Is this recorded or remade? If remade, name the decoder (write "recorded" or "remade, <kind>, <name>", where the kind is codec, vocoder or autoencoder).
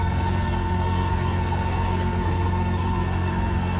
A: remade, codec, SNAC